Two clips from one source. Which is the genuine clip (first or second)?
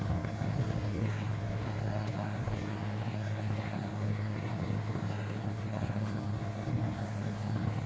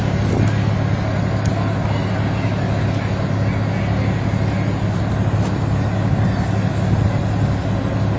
second